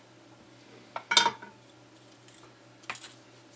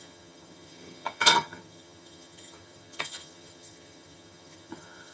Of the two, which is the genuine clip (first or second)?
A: first